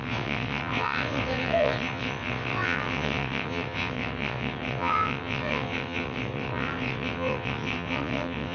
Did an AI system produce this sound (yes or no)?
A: yes